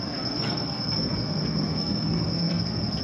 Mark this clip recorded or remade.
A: remade